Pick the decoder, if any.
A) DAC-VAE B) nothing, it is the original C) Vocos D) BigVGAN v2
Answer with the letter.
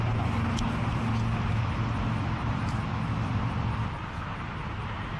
B